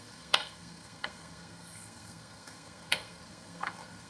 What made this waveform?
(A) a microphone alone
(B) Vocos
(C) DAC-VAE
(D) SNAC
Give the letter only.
D